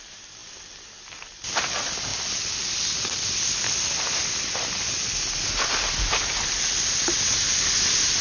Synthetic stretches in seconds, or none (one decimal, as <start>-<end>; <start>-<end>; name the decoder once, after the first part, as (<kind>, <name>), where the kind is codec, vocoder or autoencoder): none